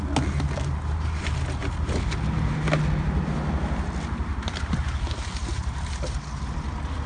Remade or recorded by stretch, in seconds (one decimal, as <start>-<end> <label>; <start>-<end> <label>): 0.0-5.6 recorded; 5.6-7.1 remade